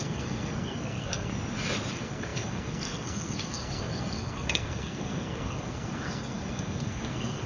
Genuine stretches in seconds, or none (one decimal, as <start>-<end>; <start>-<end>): 1.3-1.9